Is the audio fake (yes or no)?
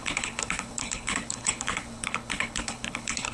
yes